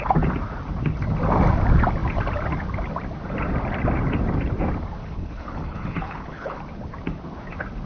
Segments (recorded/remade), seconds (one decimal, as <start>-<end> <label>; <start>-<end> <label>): 0.0-5.0 recorded; 5.0-6.6 remade; 6.6-7.9 recorded